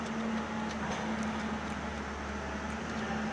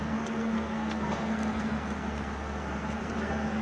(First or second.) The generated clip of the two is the second